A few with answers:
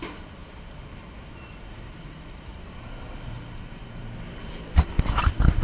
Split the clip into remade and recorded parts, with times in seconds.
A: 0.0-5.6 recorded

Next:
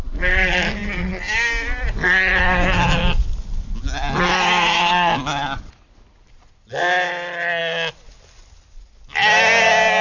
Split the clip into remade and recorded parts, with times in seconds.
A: 0.0-10.0 recorded

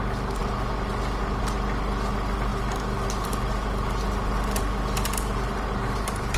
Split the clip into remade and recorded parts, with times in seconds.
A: 0.0-6.4 recorded

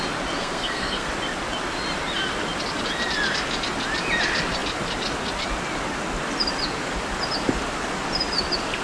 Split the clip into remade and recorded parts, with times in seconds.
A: 0.0-0.4 recorded; 0.4-1.1 remade; 1.1-8.8 recorded

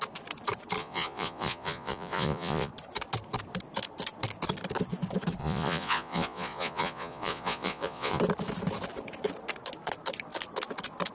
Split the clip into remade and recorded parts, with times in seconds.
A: 0.0-0.8 recorded; 0.8-2.7 remade; 2.7-5.4 recorded; 5.4-8.2 remade; 8.2-11.1 recorded

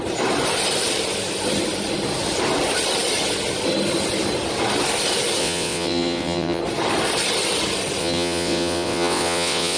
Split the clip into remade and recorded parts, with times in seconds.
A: 0.0-5.4 recorded; 5.4-6.6 remade; 6.6-8.0 recorded; 8.0-9.8 remade